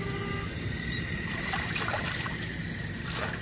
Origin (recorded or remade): recorded